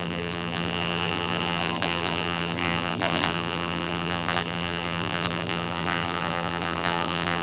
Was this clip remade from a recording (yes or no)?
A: yes